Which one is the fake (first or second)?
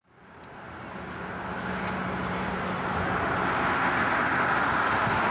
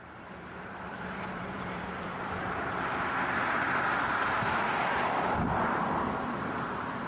second